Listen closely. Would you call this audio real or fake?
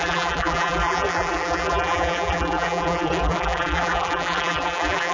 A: fake